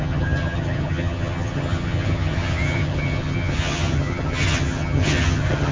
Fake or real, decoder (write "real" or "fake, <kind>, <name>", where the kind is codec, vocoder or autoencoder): fake, vocoder, HiFi-GAN